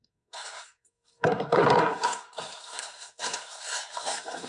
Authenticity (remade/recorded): remade